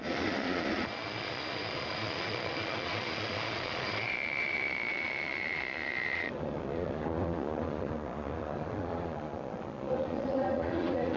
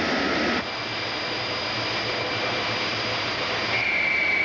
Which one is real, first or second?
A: second